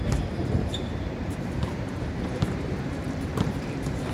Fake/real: fake